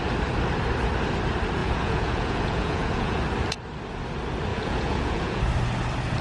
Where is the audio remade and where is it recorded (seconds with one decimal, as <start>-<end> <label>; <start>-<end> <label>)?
0.0-1.6 recorded; 1.6-3.2 remade; 3.2-4.5 recorded; 4.5-5.4 remade; 5.4-6.2 recorded